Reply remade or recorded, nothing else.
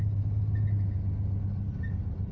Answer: recorded